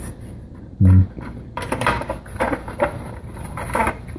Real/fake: fake